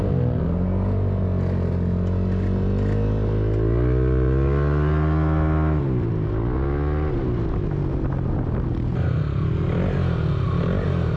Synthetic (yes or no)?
no